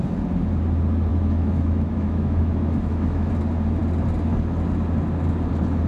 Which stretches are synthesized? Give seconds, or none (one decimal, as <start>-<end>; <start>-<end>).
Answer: 1.1-3.3